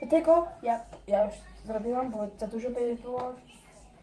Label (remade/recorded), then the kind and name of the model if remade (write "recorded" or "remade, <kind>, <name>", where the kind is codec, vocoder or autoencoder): remade, vocoder, BigVGAN v2